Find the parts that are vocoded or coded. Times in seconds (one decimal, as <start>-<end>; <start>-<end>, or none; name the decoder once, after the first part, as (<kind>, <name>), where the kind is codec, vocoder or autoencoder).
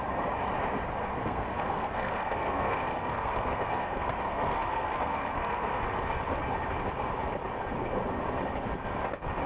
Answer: 1.0-6.0 (codec, SNAC)